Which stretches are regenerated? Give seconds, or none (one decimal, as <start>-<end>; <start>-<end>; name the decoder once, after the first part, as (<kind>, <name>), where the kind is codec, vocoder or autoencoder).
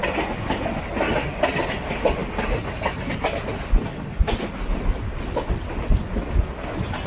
none